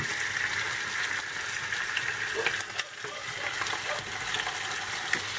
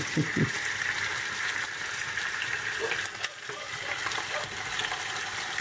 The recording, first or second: first